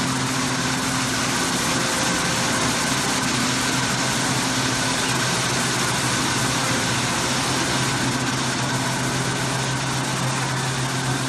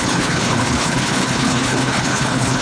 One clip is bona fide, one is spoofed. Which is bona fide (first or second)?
first